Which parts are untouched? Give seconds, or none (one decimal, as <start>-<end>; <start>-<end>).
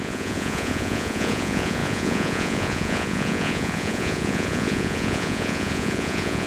none